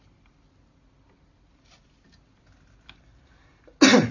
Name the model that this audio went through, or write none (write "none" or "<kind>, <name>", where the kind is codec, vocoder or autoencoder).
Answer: none